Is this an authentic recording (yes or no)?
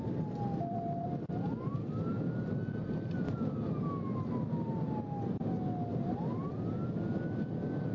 yes